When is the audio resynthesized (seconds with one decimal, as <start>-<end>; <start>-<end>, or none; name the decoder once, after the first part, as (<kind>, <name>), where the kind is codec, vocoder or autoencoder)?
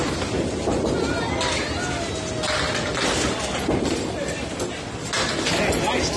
none